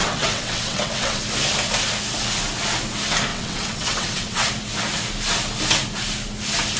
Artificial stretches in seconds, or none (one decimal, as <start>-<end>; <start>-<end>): 0.0-1.2; 3.3-4.5